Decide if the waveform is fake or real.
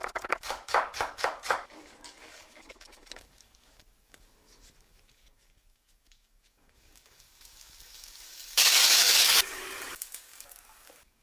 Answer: fake